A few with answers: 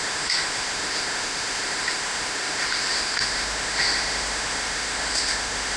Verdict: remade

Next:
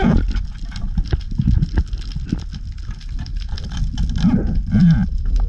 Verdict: recorded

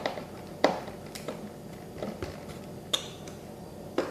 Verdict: recorded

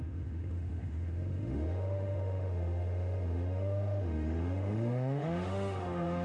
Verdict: remade